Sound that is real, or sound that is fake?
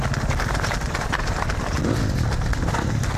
real